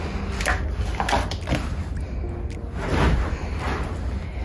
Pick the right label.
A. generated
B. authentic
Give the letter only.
B